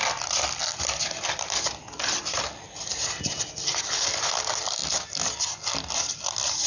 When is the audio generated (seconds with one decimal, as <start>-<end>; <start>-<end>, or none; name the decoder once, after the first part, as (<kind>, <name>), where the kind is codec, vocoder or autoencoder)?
0.0-4.8 (vocoder, BigVGAN v2); 5.9-6.7